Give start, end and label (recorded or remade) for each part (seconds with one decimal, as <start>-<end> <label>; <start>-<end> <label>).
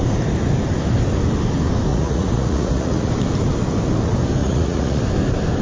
0.0-1.9 recorded; 1.9-3.1 remade; 3.1-4.4 recorded; 4.4-5.0 remade; 5.0-5.6 recorded